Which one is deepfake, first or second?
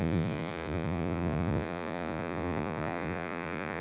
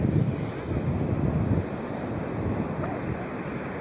first